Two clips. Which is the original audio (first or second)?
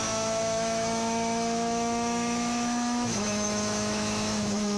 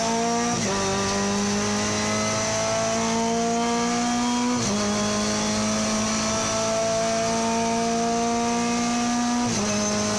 second